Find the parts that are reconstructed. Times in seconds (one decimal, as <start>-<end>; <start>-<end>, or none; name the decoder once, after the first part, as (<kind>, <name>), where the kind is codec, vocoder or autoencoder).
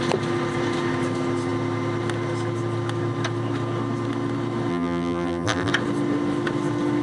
4.7-5.7 (vocoder, BigVGAN v2)